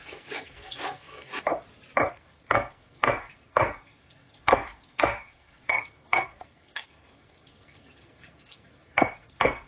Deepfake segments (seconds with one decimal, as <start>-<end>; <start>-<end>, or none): 0.0-1.3; 2.1-9.7